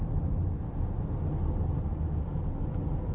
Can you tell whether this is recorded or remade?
recorded